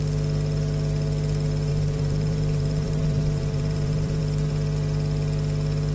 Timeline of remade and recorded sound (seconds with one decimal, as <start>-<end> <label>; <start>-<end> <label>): 0.0-1.7 recorded; 1.7-4.2 remade; 4.2-5.9 recorded